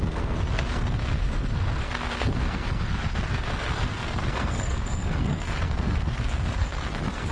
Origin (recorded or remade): remade